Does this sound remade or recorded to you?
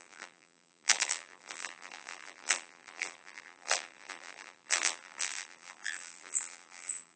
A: remade